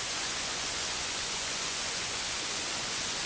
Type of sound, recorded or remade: remade